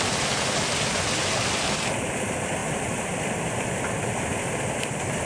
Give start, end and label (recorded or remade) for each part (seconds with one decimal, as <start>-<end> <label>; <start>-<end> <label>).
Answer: 0.0-5.3 recorded